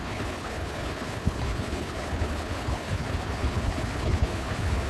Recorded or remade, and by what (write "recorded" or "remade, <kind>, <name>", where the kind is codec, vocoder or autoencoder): remade, codec, HILCodec